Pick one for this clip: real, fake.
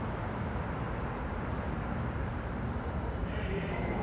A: fake